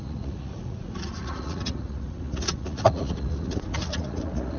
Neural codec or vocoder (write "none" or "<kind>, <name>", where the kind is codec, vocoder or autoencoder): vocoder, Vocos